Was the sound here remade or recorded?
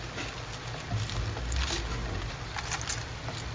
recorded